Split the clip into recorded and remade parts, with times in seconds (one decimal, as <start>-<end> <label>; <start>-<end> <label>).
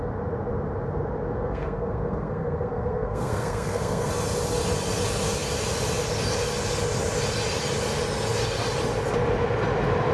0.0-1.3 recorded; 1.3-4.1 remade; 4.1-10.1 recorded